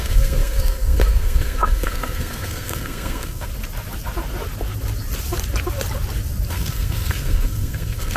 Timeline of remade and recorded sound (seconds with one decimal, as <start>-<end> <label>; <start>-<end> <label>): 0.0-3.5 remade; 3.5-6.5 recorded; 6.5-8.2 remade